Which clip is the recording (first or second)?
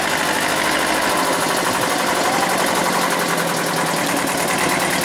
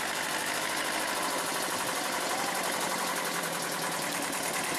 first